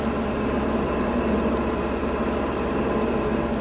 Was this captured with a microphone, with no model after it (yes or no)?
yes